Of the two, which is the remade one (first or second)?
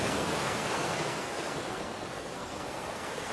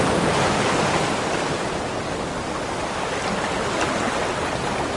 first